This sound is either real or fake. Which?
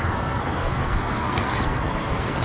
fake